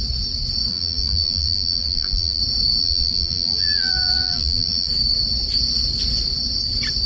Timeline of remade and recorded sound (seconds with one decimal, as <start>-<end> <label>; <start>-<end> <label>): 0.0-0.7 recorded; 0.7-2.4 remade; 2.4-2.8 recorded; 2.8-4.9 remade; 4.9-7.1 recorded